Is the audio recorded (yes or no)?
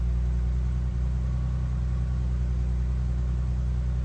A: yes